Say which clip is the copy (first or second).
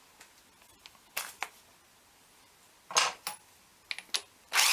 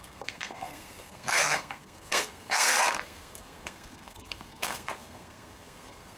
second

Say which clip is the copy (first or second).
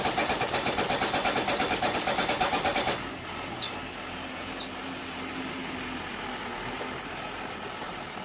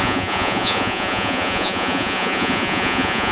second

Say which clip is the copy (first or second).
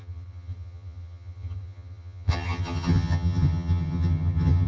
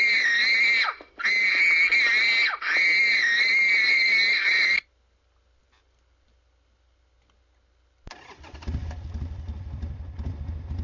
first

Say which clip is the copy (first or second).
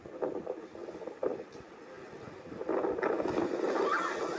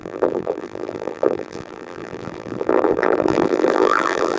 second